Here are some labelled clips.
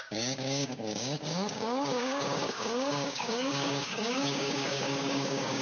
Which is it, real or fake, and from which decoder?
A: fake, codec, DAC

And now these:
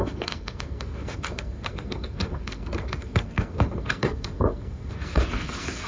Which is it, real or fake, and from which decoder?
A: fake, codec, SNAC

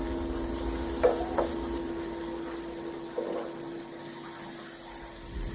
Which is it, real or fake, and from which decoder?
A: fake, vocoder, BigVGAN v2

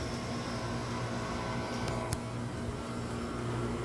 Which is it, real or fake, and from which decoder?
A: real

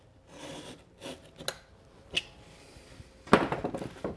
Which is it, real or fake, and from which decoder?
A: real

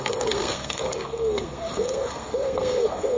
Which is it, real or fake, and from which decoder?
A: fake, codec, SNAC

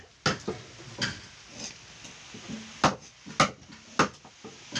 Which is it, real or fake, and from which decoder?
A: real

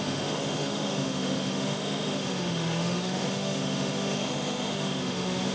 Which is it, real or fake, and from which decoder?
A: fake, autoencoder, DAC-VAE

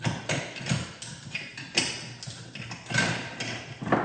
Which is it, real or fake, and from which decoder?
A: real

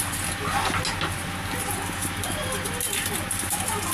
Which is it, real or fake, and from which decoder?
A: real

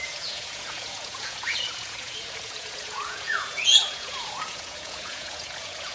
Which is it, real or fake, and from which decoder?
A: fake, vocoder, Vocos